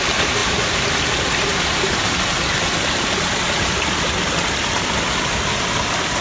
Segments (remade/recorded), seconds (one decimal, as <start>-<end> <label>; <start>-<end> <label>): 0.0-6.2 recorded